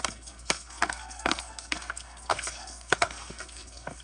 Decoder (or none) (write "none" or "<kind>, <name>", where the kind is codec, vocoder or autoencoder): codec, SNAC